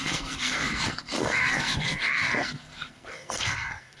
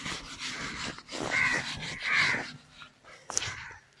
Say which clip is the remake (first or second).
first